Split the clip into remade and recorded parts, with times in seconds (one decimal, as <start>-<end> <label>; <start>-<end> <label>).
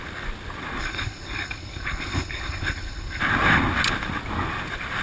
0.0-0.8 recorded; 0.8-3.2 remade; 3.2-5.0 recorded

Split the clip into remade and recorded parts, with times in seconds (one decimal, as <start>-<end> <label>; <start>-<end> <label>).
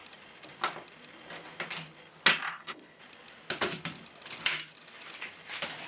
0.0-2.5 recorded; 2.5-3.0 remade; 3.0-5.9 recorded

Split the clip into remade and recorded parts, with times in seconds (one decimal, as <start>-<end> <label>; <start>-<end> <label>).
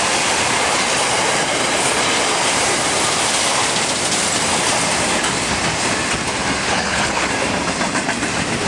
0.0-6.6 recorded; 6.6-7.3 remade; 7.3-8.7 recorded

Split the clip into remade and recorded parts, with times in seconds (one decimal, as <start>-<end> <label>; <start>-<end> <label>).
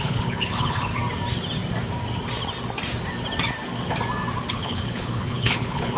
0.0-0.9 remade; 0.9-4.5 recorded; 4.5-6.0 remade